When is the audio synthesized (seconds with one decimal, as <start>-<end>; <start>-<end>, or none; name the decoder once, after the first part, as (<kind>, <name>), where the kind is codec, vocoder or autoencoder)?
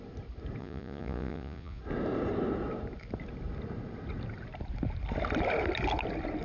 0.6-1.8 (vocoder, Vocos)